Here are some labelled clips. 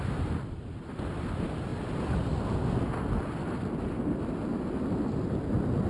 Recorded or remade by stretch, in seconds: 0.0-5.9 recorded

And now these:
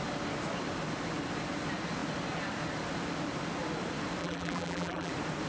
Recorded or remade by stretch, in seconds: 0.0-4.2 recorded; 4.2-5.1 remade; 5.1-5.5 recorded

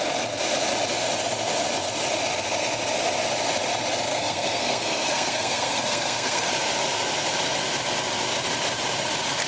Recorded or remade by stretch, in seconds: 0.0-4.1 recorded; 4.1-6.5 remade; 6.5-9.5 recorded

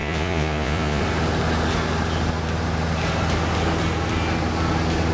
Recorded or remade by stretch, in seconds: 0.0-1.0 remade; 1.0-5.1 recorded

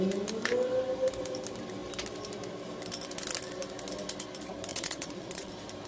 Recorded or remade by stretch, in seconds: 0.0-4.7 recorded; 4.7-5.5 remade; 5.5-5.9 recorded

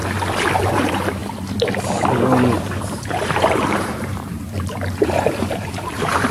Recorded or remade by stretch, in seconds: 0.0-0.7 recorded; 0.7-1.2 remade; 1.2-2.6 recorded; 2.6-6.3 remade